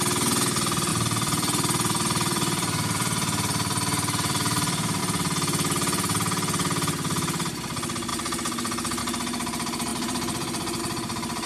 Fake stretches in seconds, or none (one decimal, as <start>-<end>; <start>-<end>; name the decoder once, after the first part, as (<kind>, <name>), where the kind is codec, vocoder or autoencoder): 0.9-5.0 (vocoder, BigVGAN v2); 8.1-9.0; 9.9-10.8